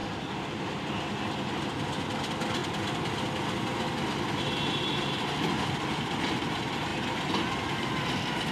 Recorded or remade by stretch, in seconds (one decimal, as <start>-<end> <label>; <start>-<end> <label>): 0.0-0.6 remade; 0.6-8.5 recorded